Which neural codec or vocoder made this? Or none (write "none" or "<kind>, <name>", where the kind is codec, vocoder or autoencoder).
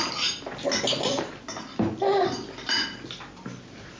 none